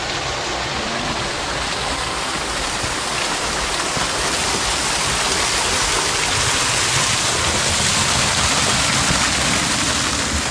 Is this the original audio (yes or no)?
yes